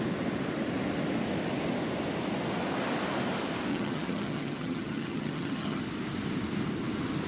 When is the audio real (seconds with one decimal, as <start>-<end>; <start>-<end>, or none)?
0.0-3.7; 5.8-7.3